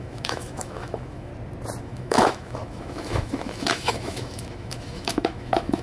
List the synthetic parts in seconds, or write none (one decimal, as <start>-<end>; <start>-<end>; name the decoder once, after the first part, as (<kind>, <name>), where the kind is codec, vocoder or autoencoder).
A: 0.0-1.3 (autoencoder, DAC-VAE); 1.8-5.8